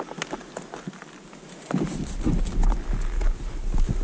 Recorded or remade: recorded